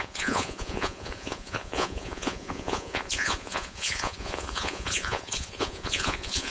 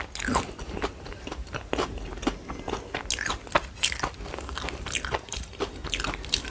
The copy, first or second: first